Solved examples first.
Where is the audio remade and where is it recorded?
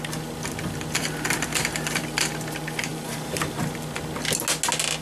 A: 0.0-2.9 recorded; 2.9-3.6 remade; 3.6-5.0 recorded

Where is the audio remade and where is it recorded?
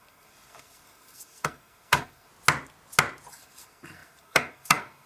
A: 0.0-2.3 remade; 2.3-3.3 recorded; 3.3-5.1 remade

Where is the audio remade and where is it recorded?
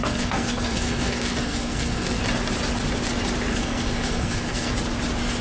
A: 0.0-2.2 remade; 2.2-3.5 recorded; 3.5-4.7 remade; 4.7-5.4 recorded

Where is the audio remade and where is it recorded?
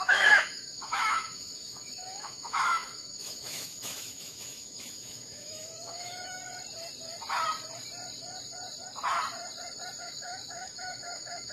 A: 0.0-6.4 remade; 6.4-10.0 recorded; 10.0-11.5 remade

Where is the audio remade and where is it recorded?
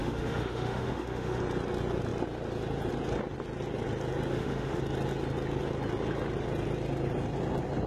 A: 0.0-1.4 remade; 1.4-4.3 recorded; 4.3-4.8 remade; 4.8-7.9 recorded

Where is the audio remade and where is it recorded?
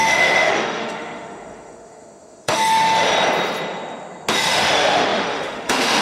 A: 0.0-3.1 remade; 3.1-4.3 recorded; 4.3-6.0 remade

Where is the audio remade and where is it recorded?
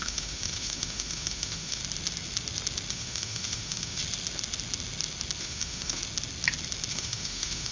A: 0.0-1.8 remade; 1.8-2.9 recorded; 2.9-4.0 remade; 4.0-5.4 recorded; 5.4-6.0 remade; 6.0-6.9 recorded; 6.9-7.7 remade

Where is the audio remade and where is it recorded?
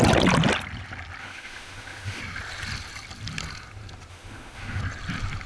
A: 0.0-1.2 recorded; 1.2-2.2 remade; 2.2-4.1 recorded; 4.1-4.8 remade; 4.8-5.5 recorded